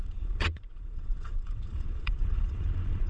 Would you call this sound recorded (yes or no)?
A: no